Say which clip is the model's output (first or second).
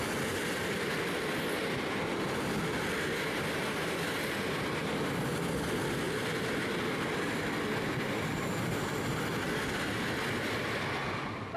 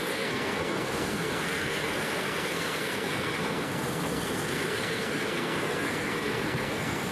second